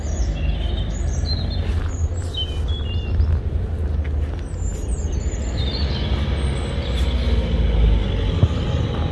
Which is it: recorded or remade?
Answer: recorded